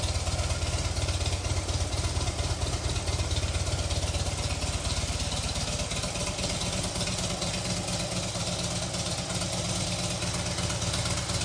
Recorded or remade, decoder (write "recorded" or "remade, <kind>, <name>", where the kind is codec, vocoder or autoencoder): recorded